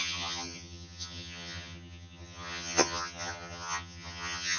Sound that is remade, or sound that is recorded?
remade